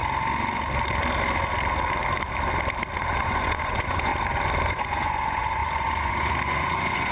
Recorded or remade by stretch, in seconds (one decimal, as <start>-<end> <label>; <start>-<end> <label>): 0.0-3.2 recorded; 3.2-4.1 remade; 4.1-4.7 recorded; 4.7-7.1 remade